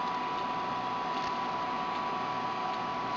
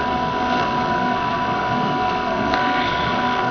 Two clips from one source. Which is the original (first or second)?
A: first